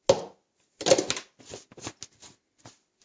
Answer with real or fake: real